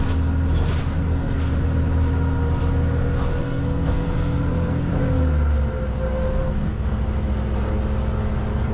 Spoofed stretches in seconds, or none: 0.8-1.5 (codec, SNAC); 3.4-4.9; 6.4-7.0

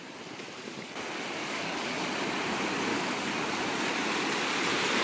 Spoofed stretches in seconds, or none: 1.4-2.0 (codec, DAC); 2.9-3.5

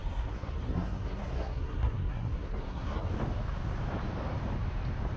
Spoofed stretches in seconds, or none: 0.0-3.1 (codec, SNAC)

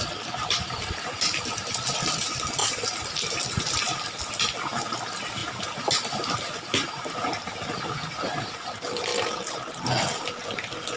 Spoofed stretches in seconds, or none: 5.4-6.9 (vocoder, BigVGAN v2); 9.1-11.0

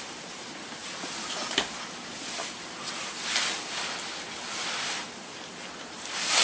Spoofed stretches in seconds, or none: none

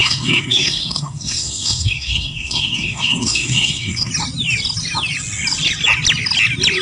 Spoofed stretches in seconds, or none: 0.0-4.1 (codec, SNAC)